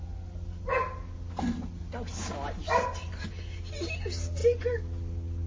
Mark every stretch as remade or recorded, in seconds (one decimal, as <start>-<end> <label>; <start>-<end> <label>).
0.0-5.5 recorded